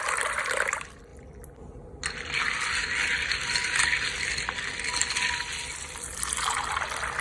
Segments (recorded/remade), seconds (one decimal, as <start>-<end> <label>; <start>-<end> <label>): 0.0-7.2 recorded